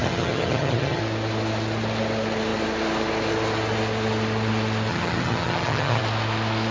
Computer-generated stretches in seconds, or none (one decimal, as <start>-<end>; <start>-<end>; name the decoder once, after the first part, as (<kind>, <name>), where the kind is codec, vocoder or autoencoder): 0.0-1.0 (vocoder, HiFi-GAN); 4.9-6.0